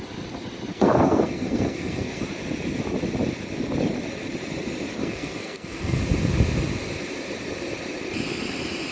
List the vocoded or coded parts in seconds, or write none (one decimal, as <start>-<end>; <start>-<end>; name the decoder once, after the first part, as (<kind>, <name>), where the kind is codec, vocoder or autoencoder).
0.7-2.2 (codec, SNAC); 5.0-6.0